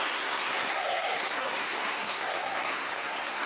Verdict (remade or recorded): remade